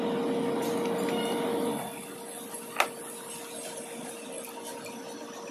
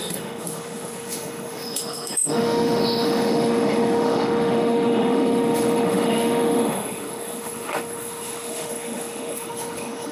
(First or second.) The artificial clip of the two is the second